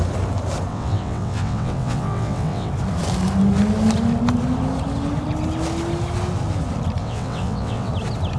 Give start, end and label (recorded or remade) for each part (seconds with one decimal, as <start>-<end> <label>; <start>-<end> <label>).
0.0-0.7 recorded; 0.7-2.7 remade; 2.7-7.0 recorded; 7.0-7.9 remade; 7.9-8.4 recorded

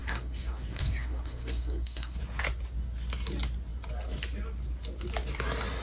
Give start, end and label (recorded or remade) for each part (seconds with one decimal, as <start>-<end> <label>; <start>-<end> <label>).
0.0-2.2 remade; 2.2-5.8 recorded